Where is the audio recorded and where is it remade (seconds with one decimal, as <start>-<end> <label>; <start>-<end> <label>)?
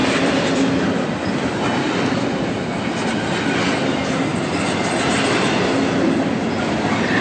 0.0-7.2 recorded